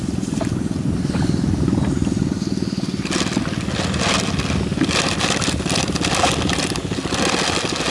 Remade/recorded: recorded